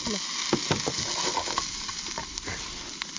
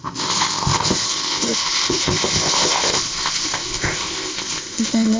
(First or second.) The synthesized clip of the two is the second